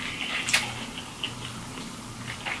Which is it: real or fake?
real